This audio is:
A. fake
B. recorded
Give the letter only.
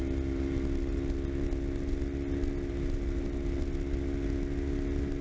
B